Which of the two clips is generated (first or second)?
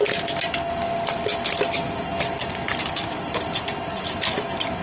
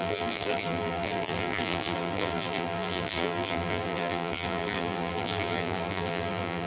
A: second